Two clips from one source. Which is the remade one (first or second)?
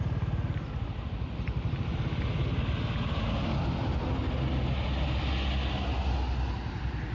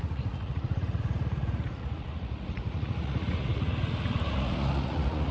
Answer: second